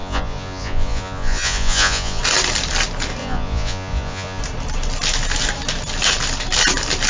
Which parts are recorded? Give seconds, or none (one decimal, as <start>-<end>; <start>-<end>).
2.2-3.2; 4.4-7.1